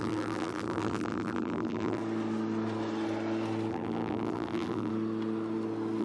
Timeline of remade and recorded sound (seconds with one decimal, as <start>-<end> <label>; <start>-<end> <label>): 0.0-2.0 remade; 2.0-3.7 recorded; 3.7-4.9 remade; 4.9-6.0 recorded